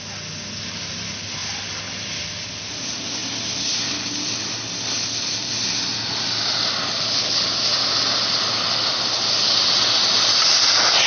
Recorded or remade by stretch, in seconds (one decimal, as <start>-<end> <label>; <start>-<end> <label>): 0.0-11.1 recorded